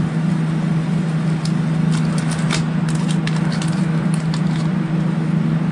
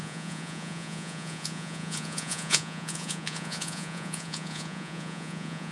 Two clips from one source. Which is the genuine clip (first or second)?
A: first